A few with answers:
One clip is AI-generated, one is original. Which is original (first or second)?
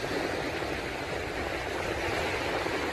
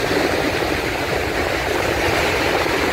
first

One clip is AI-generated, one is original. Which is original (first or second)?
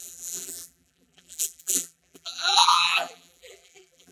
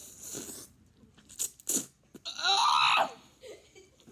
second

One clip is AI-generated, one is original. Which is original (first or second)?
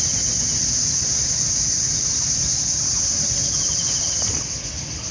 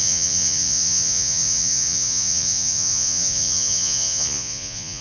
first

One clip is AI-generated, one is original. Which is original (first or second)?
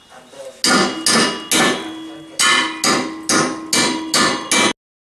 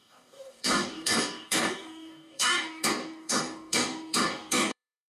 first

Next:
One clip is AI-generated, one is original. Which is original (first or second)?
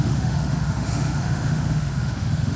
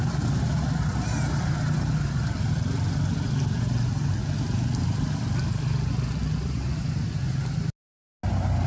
second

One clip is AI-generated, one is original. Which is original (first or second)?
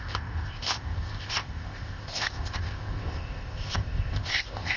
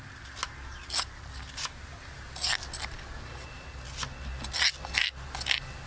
second